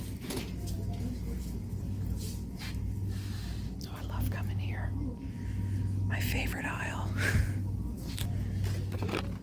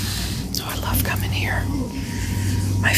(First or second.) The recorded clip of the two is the first